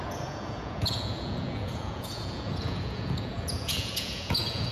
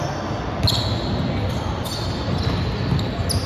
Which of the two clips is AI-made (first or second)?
first